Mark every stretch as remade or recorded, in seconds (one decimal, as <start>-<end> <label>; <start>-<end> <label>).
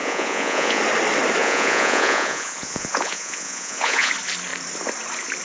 0.0-0.8 remade; 0.8-1.4 recorded; 1.4-4.1 remade; 4.1-5.4 recorded